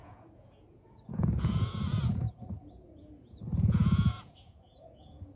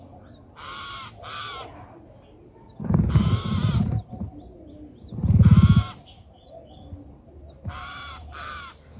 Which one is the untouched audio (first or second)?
second